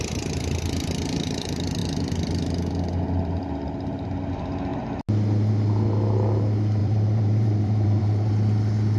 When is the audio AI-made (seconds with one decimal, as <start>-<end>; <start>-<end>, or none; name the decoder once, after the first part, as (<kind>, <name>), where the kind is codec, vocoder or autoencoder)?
6.8-8.3 (vocoder, BigVGAN v2)